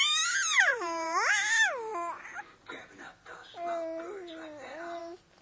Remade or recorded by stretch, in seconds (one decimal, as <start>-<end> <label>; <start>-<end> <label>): 0.0-0.5 recorded; 0.5-1.3 remade; 1.3-5.4 recorded